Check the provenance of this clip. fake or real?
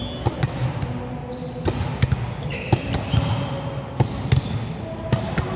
real